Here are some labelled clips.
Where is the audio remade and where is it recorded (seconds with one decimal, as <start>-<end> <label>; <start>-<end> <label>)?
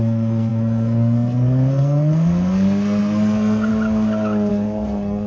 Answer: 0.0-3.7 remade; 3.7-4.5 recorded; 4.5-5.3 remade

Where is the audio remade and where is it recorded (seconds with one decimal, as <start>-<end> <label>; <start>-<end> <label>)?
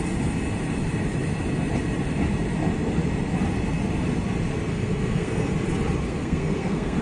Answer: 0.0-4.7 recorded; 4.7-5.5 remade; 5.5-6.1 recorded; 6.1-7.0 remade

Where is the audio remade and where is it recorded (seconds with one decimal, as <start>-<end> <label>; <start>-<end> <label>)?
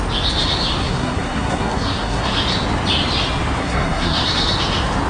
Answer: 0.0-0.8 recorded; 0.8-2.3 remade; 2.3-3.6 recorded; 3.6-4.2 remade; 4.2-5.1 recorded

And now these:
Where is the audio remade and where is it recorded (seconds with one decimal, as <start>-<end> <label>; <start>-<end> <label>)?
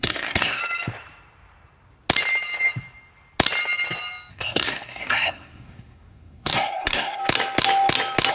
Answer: 0.0-0.6 remade; 0.6-4.3 recorded; 4.3-7.2 remade; 7.2-8.3 recorded